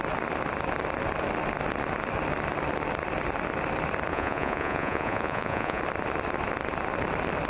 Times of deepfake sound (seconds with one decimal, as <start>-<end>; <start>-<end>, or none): 4.1-5.8

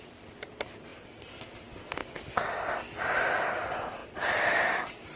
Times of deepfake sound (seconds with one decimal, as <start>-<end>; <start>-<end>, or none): none